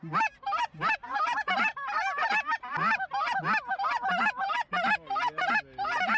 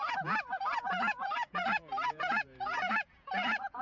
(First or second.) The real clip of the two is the first